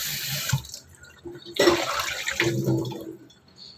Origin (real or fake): real